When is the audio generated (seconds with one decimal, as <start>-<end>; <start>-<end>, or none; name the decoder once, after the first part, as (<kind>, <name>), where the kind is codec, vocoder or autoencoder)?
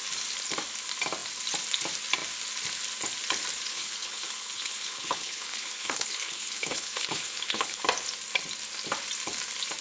3.7-7.8 (codec, HILCodec)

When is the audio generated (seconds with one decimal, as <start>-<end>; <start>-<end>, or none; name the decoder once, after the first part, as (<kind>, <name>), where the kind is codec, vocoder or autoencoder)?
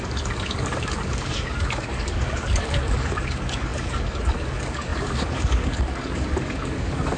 0.0-7.2 (codec, DAC)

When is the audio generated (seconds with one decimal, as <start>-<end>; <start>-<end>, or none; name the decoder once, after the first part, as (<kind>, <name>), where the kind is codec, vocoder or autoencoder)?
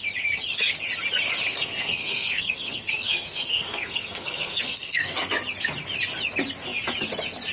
1.5-5.3 (codec, SNAC)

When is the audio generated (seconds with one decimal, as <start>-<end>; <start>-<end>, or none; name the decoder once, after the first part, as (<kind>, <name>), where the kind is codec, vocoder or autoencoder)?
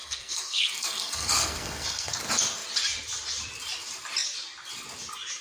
0.0-2.2 (codec, SNAC)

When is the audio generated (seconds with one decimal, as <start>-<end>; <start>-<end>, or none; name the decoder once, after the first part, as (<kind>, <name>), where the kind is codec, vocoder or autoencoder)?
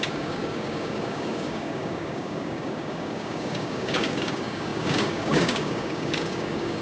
0.0-6.8 (codec, DAC)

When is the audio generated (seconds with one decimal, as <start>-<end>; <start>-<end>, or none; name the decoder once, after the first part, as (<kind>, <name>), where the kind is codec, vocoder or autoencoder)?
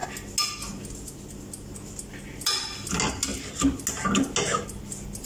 none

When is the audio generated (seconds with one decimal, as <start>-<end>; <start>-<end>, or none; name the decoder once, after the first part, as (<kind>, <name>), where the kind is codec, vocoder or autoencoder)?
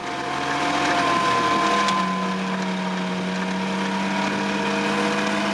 none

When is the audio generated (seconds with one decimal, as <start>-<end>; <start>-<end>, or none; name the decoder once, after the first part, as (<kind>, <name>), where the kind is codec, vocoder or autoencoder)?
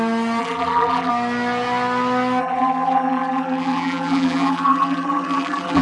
0.4-1.1 (vocoder, BigVGAN v2); 2.4-5.8